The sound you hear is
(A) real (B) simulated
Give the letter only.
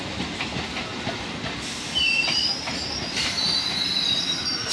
A